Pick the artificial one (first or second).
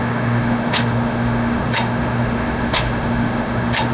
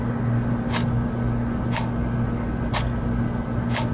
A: first